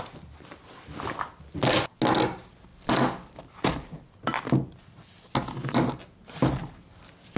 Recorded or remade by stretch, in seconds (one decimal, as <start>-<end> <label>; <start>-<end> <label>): 0.0-7.4 recorded

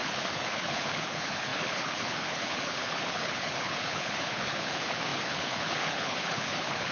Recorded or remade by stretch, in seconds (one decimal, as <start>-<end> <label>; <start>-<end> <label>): 0.0-6.9 remade

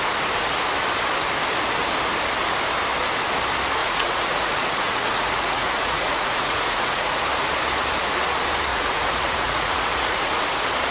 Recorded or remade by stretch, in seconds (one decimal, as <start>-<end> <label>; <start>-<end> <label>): 0.0-3.8 recorded; 3.8-7.1 remade; 7.1-8.7 recorded; 8.7-10.3 remade; 10.3-10.9 recorded

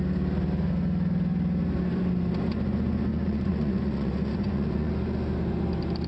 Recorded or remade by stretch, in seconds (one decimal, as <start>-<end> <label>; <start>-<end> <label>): 0.0-3.1 recorded; 3.1-4.9 remade; 4.9-6.1 recorded

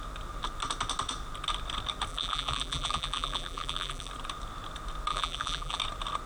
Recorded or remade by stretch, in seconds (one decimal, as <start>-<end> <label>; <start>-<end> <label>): 0.0-2.1 recorded; 2.1-4.1 remade; 4.1-5.1 recorded; 5.1-5.8 remade; 5.8-6.3 recorded

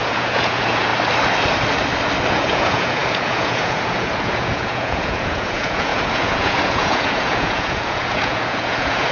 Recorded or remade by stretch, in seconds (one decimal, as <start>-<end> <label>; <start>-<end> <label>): 0.0-0.9 remade; 0.9-2.3 recorded; 2.3-9.1 remade